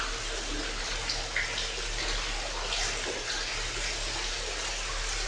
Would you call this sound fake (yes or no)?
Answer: no